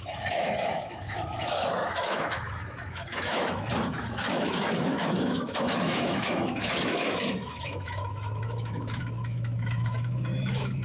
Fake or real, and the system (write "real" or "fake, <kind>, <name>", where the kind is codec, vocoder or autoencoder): fake, autoencoder, DAC-VAE